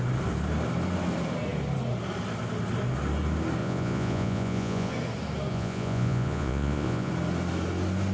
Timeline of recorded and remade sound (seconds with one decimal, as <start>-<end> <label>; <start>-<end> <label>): 0.0-3.6 recorded; 3.6-4.9 remade; 4.9-5.5 recorded; 5.5-7.1 remade; 7.1-8.1 recorded

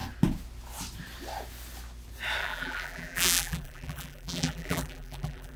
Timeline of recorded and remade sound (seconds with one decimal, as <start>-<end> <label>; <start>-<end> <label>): 0.0-2.4 recorded; 2.4-5.6 remade